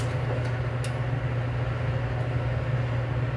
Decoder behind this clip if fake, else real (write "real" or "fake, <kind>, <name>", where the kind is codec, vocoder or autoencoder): real